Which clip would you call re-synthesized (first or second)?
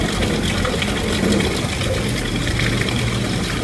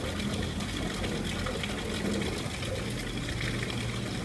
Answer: first